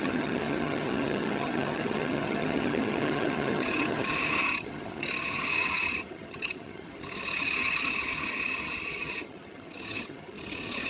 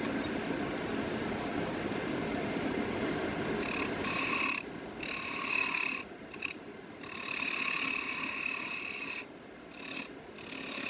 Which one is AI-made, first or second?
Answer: first